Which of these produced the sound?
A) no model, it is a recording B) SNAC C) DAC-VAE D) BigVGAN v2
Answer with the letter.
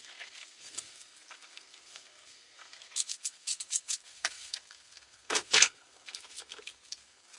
B